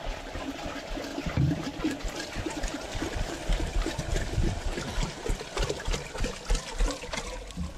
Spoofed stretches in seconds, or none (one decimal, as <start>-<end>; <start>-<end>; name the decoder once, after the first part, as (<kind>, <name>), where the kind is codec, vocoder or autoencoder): none